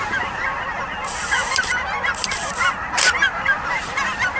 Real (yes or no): no